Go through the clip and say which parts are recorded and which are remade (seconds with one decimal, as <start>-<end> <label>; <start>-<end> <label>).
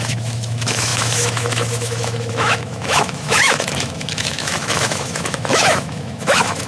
0.0-6.7 remade